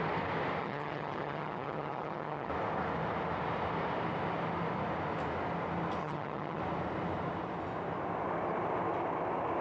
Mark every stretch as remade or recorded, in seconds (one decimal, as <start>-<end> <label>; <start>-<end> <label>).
0.0-0.6 recorded; 0.6-2.5 remade; 2.5-6.0 recorded; 6.0-6.6 remade; 6.6-9.6 recorded